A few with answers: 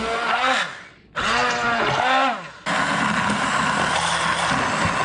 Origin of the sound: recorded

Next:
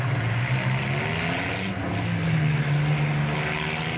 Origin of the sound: recorded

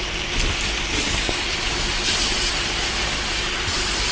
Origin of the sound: recorded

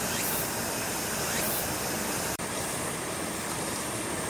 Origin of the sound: remade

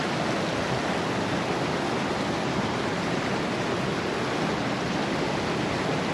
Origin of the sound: recorded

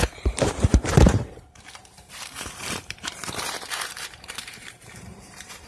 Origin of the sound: remade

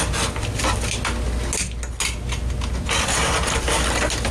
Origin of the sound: recorded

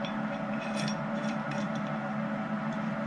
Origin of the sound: remade